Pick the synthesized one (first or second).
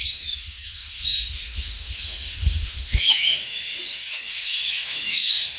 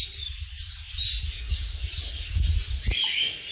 first